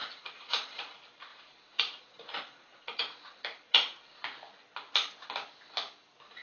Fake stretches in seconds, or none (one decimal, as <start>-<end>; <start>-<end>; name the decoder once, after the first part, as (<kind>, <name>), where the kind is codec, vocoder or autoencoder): 0.0-0.9 (vocoder, Vocos); 1.3-4.2